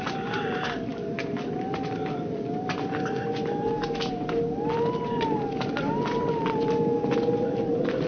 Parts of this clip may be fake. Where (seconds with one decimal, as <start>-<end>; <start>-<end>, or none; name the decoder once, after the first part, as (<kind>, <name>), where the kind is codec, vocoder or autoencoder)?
none